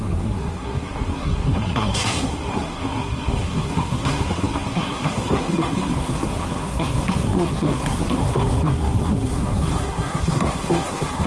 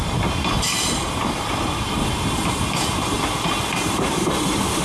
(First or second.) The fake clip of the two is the first